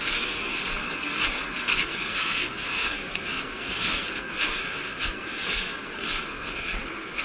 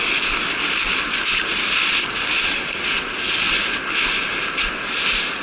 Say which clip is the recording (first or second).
second